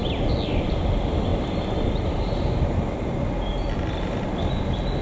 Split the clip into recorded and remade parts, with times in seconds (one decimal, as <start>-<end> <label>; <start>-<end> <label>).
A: 0.0-5.0 recorded